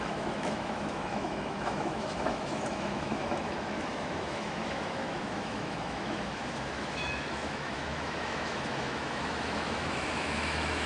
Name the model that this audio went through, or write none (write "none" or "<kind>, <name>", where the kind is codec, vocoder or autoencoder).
autoencoder, DAC-VAE